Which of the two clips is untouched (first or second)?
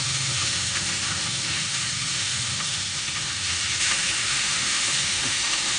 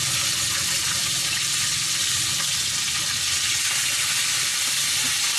second